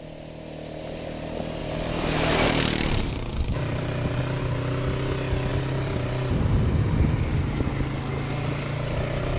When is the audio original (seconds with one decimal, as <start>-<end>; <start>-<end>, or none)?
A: 0.0-1.6; 4.4-5.5; 7.6-9.4

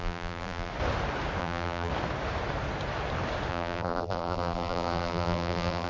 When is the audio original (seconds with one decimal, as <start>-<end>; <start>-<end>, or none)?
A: 0.7-1.4; 1.9-3.5

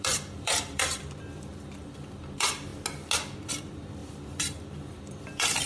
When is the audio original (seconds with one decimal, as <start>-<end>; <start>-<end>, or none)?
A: 2.7-3.5